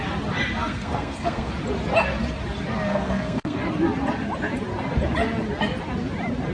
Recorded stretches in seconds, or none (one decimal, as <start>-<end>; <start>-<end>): 0.0-0.6; 1.5-2.9; 3.6-6.5